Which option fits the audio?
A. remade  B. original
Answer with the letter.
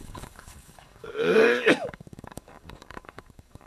A